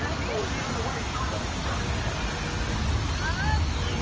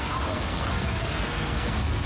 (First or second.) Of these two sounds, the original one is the first